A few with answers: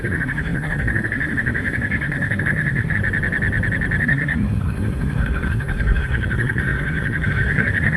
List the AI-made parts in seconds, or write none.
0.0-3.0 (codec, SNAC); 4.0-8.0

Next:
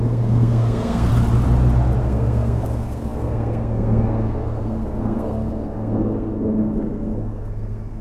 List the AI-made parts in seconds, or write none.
0.0-1.1 (codec, SNAC); 2.0-8.0